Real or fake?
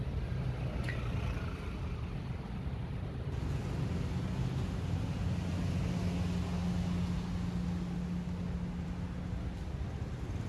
real